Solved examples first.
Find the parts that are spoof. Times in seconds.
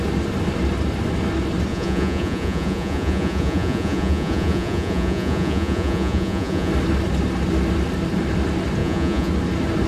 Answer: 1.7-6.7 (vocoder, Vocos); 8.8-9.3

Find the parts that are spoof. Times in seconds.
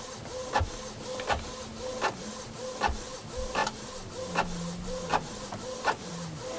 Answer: none